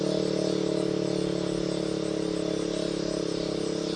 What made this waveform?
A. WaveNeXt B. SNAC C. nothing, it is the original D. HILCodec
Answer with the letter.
C